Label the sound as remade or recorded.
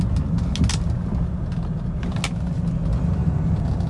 recorded